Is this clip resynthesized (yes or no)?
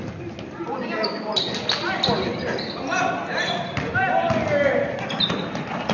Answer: no